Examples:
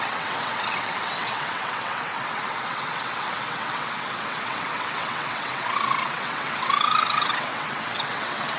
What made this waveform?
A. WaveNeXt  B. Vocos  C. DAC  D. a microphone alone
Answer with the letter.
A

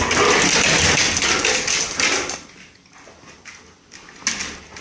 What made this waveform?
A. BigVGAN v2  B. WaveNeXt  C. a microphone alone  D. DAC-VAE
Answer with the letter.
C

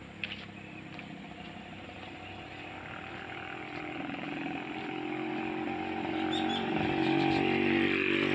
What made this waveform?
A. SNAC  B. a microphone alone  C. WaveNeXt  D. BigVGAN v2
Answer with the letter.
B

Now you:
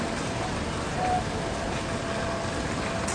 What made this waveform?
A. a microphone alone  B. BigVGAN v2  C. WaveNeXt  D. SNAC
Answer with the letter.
A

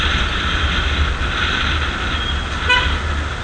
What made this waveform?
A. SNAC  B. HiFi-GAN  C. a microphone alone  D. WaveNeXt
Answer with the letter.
C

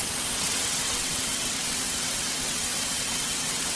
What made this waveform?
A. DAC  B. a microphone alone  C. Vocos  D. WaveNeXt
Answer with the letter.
D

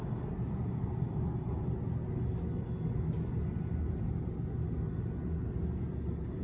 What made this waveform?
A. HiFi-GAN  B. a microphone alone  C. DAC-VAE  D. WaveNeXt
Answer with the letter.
B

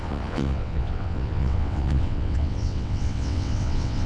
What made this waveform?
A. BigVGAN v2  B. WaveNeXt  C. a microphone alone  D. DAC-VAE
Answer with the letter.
B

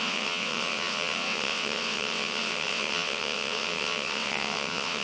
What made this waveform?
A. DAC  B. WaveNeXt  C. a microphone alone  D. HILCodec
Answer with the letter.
B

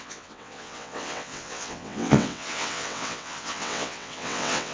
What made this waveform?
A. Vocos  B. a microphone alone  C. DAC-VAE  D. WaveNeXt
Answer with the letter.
D